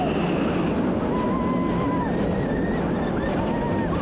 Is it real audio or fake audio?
real